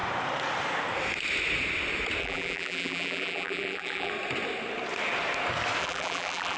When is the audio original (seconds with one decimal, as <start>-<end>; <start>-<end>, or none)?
0.0-2.2; 4.1-5.8